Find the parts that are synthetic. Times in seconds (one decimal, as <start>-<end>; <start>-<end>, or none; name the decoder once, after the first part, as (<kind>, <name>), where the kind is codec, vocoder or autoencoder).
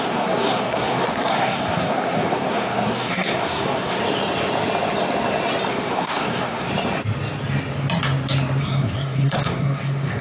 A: 0.0-4.0 (codec, SNAC); 5.7-6.7; 8.6-10.2